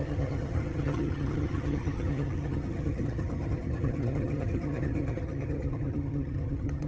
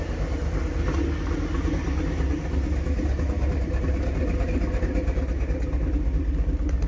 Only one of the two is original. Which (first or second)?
second